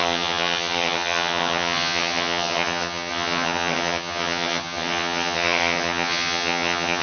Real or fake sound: fake